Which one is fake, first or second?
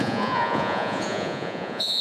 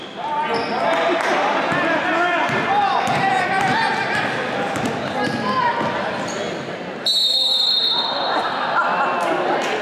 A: first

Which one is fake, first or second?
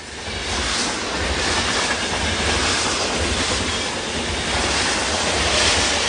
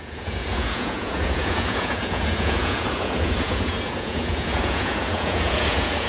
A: second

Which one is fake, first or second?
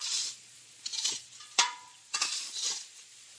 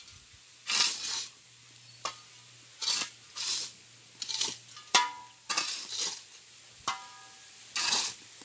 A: first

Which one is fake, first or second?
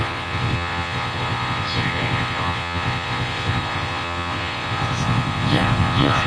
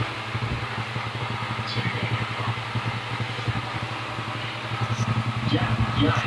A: first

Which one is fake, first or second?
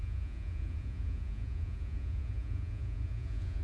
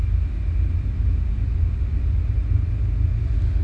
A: first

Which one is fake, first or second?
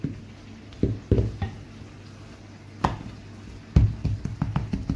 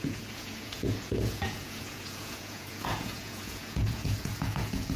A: second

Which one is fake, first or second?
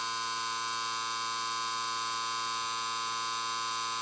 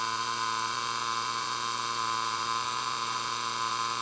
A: second